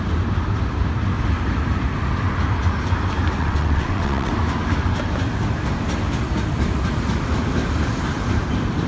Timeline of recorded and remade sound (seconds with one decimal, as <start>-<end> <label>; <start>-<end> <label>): 0.0-3.4 recorded; 3.4-4.3 remade; 4.3-8.9 recorded